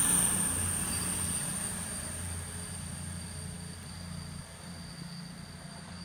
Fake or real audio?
real